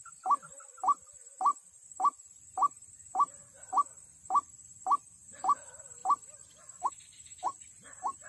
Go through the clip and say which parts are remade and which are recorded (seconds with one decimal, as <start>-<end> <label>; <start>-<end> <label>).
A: 0.0-8.3 recorded